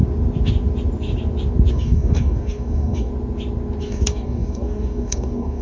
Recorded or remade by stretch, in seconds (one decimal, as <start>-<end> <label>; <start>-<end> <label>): 0.0-1.7 recorded; 1.7-3.1 remade; 3.1-3.8 recorded; 3.8-5.6 remade